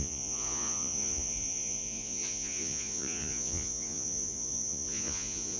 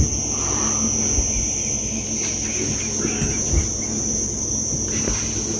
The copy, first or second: first